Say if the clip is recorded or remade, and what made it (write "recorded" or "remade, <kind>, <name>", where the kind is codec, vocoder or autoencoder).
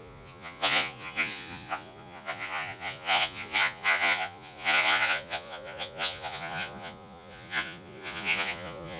remade, vocoder, Vocos